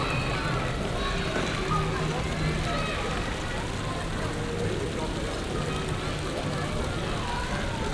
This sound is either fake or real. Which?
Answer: real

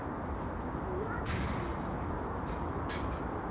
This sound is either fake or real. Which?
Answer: real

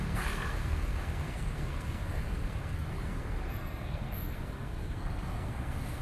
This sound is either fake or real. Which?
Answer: fake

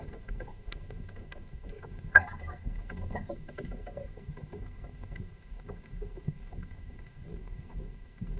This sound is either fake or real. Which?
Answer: fake